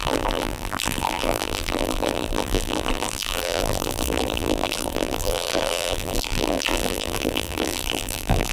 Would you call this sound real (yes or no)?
no